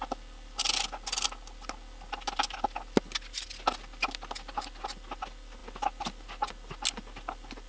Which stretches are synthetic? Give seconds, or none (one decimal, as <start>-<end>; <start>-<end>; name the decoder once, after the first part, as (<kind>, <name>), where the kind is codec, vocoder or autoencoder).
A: none